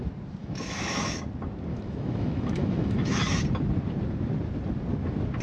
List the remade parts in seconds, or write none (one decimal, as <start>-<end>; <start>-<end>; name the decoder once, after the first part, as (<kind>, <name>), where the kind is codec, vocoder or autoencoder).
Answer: 0.4-1.2 (autoencoder, DAC-VAE); 1.7-3.4